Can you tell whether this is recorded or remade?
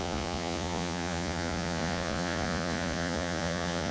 remade